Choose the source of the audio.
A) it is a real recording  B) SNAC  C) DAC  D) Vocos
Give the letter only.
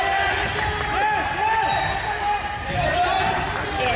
A